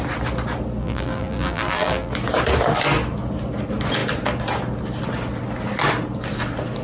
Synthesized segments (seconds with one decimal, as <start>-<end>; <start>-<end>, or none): 0.8-2.1